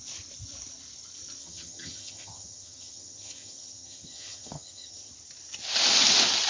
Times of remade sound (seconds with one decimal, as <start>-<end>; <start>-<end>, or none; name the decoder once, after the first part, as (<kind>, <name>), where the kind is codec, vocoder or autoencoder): 1.4-5.1 (vocoder, HiFi-GAN)